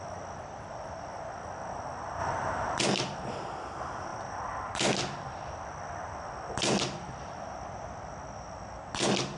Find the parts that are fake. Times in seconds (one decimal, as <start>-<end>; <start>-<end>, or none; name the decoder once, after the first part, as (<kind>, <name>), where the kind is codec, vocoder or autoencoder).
none